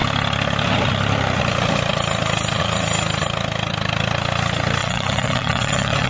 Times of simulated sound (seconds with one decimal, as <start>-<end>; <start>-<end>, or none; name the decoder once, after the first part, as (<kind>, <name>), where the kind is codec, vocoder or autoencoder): 4.8-6.1 (vocoder, WaveNeXt)

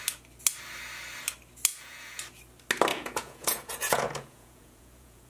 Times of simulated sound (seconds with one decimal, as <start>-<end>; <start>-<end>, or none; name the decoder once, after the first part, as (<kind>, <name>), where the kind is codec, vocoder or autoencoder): 1.7-2.2 (vocoder, Vocos); 2.9-5.3